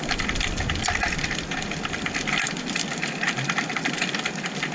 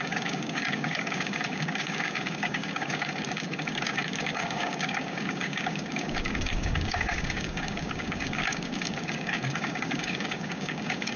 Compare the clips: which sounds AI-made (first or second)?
second